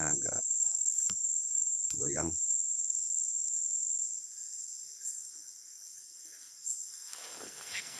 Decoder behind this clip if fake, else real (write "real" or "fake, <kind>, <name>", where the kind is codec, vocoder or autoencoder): fake, codec, SNAC